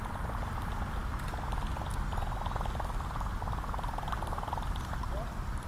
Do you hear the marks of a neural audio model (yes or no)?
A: no